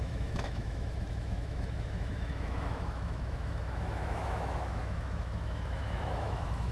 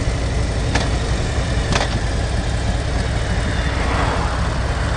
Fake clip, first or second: first